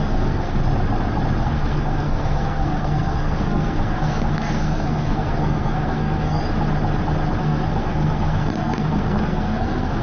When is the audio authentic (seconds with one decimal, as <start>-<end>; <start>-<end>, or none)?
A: 0.6-1.4; 6.4-7.4